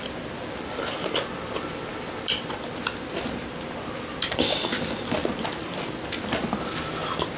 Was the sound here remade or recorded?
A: recorded